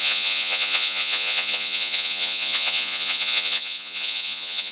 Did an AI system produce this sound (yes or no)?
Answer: yes